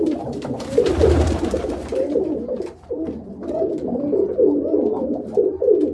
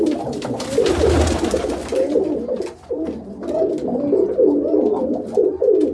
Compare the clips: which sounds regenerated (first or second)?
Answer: first